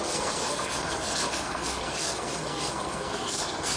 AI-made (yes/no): yes